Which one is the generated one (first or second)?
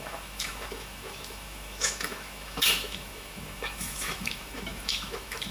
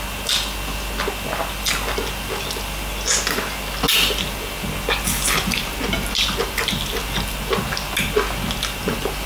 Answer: first